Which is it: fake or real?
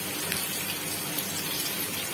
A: real